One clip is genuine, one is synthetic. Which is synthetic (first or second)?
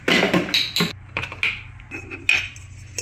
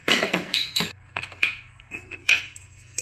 second